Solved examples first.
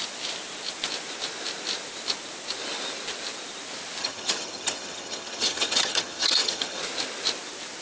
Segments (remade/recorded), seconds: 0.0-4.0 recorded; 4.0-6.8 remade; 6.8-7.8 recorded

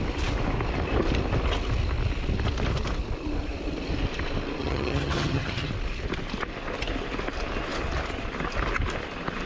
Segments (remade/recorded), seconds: 0.0-4.6 recorded; 4.6-5.7 remade; 5.7-9.5 recorded

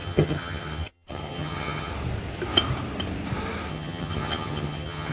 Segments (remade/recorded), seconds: 0.0-1.9 remade; 1.9-3.7 recorded; 3.7-5.1 remade

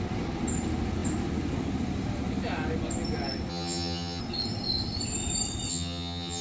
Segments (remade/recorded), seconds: 0.0-3.5 recorded; 3.5-4.2 remade; 4.2-5.7 recorded; 5.7-6.4 remade

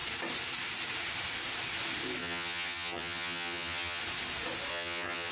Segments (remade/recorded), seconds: 0.0-2.2 recorded; 2.2-4.0 remade; 4.0-4.7 recorded; 4.7-5.3 remade

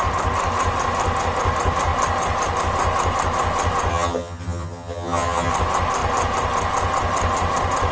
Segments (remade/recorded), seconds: 0.0-3.9 recorded; 3.9-5.5 remade; 5.5-7.9 recorded

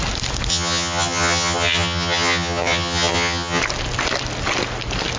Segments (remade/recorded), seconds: 0.0-0.5 recorded; 0.5-3.6 remade; 3.6-5.2 recorded

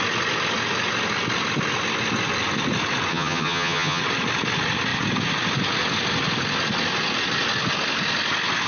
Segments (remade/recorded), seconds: 0.0-3.1 recorded; 3.1-4.0 remade; 4.0-8.7 recorded